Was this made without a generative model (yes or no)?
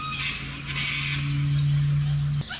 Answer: yes